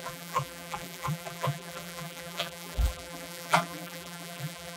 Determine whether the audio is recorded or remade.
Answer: remade